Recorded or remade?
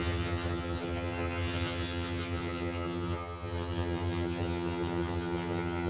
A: remade